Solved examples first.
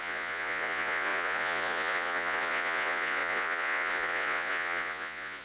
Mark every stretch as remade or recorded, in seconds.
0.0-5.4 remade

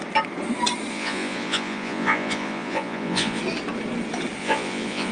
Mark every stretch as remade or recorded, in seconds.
0.0-0.9 recorded; 0.9-3.4 remade; 3.4-4.4 recorded; 4.4-5.1 remade

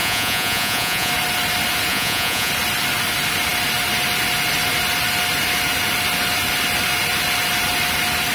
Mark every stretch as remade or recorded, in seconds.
0.0-1.1 remade; 1.1-1.9 recorded; 1.9-2.5 remade; 2.5-8.3 recorded

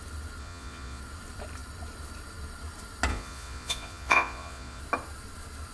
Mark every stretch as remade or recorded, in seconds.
0.0-0.4 recorded; 0.4-1.0 remade; 1.0-3.1 recorded; 3.1-4.8 remade; 4.8-5.7 recorded

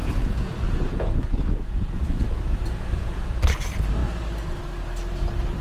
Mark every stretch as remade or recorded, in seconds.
0.0-3.4 remade; 3.4-5.6 recorded

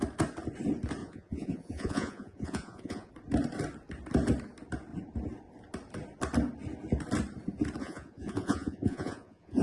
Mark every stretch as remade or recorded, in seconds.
0.0-1.0 recorded; 1.0-3.1 remade; 3.1-7.8 recorded; 7.8-9.6 remade

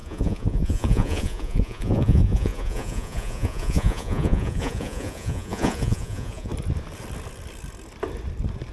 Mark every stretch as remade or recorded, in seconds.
0.0-6.5 remade; 6.5-8.7 recorded

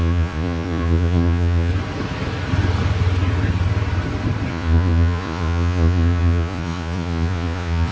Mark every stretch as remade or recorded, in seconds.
0.0-1.7 remade; 1.7-4.5 recorded; 4.5-7.9 remade